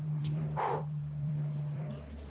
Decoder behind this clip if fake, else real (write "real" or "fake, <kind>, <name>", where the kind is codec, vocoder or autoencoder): fake, vocoder, BigVGAN v2